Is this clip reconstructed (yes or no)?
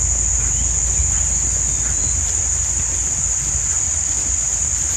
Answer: no